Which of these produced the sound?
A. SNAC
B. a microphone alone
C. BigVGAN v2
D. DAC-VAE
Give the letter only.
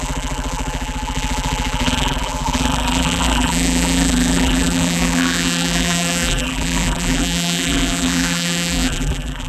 C